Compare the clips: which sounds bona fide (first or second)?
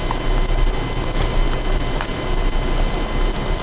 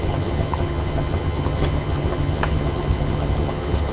first